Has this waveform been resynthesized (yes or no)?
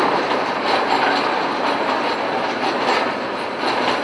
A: yes